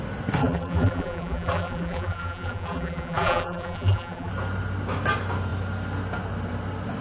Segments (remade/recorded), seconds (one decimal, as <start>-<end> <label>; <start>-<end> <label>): 0.0-0.4 recorded; 0.4-4.3 remade; 4.3-7.0 recorded